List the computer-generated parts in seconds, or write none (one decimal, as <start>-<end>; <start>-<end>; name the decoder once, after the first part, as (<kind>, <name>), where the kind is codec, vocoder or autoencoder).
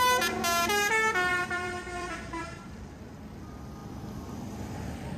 1.3-3.4 (vocoder, BigVGAN v2)